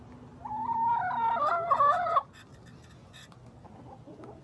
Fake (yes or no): no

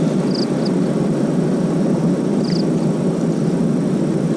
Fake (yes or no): no